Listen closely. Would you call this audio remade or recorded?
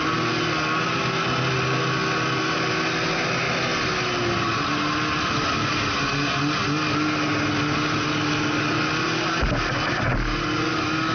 recorded